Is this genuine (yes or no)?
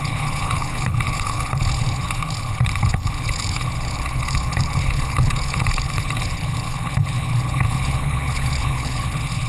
no